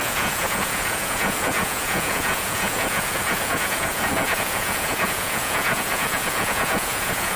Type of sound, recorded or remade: remade